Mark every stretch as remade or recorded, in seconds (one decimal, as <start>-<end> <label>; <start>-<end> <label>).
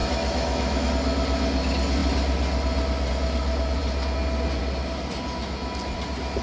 0.0-0.9 remade; 0.9-6.4 recorded